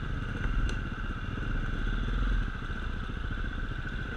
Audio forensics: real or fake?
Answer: real